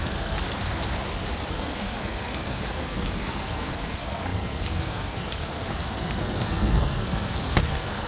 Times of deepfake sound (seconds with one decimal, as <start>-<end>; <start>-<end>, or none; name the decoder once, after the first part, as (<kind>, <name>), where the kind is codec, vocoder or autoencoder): 0.0-0.6 (codec, SNAC); 1.5-8.1